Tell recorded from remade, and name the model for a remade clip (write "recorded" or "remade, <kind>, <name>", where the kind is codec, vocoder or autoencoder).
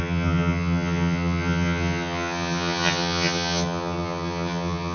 remade, vocoder, HiFi-GAN